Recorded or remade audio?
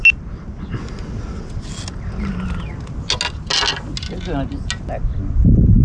recorded